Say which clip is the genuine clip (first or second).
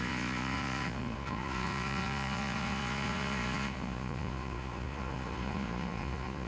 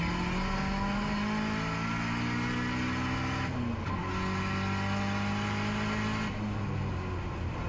second